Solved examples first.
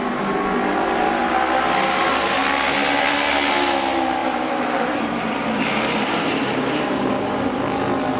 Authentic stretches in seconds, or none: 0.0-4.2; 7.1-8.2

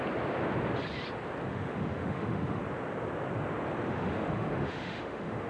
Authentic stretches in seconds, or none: 0.0-1.5; 2.6-3.9

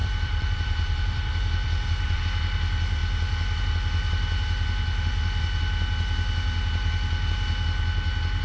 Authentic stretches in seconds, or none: 2.2-8.4

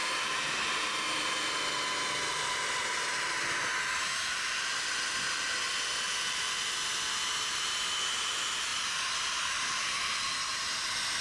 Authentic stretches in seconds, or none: 0.0-11.2

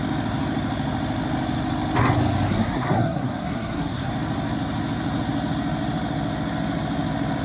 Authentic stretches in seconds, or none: 0.0-2.5; 4.1-7.4

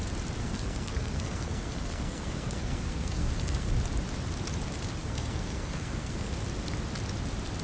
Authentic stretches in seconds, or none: 0.0-0.4; 3.7-5.0; 6.3-7.6

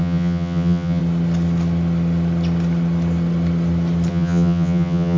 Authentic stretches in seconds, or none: 1.0-4.1

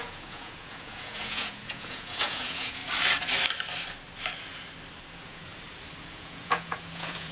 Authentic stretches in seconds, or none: 2.8-5.1; 5.5-6.1